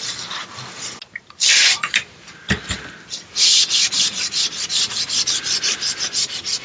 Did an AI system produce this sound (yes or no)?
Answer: no